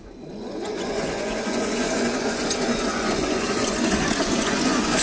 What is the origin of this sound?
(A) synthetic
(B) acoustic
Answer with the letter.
A